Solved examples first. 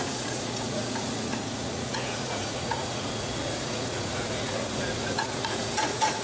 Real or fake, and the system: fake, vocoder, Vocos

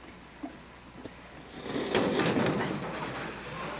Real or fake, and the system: real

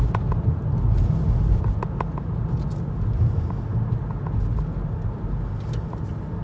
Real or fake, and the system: real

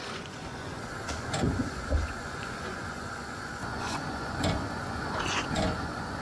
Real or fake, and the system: fake, vocoder, Vocos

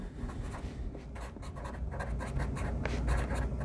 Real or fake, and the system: real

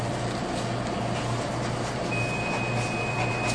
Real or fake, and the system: real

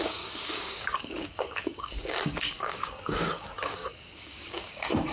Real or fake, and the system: fake, codec, DAC